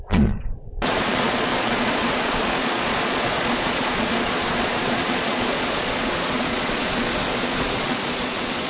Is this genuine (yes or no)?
no